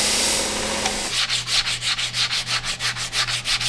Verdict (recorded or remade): recorded